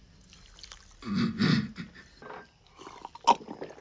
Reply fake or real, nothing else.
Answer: real